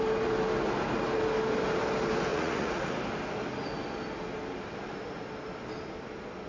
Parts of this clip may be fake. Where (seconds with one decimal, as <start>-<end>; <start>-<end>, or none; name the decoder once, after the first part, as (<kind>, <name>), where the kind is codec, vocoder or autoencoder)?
2.3-2.9 (vocoder, Vocos)